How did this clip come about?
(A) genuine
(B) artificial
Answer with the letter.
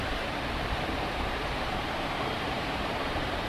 B